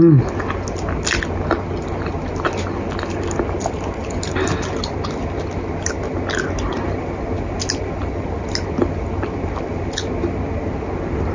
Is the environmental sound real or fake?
real